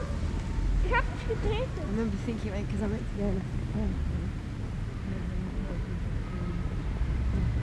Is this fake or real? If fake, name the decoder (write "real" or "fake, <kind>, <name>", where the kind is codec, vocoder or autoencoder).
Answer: real